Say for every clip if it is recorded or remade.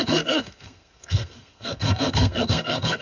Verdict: remade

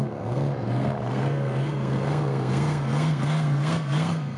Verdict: remade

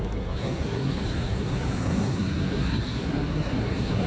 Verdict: remade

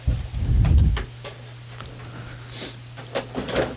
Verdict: recorded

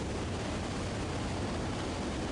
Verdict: recorded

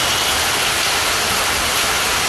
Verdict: recorded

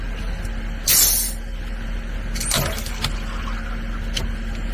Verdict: recorded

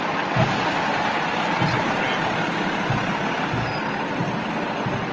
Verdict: recorded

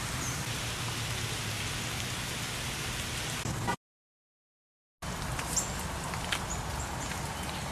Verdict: recorded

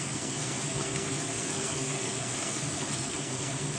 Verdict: remade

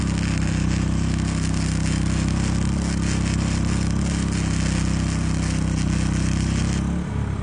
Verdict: recorded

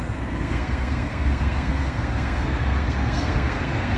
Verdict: remade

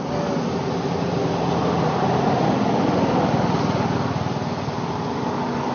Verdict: recorded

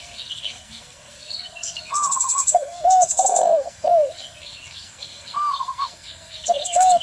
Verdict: remade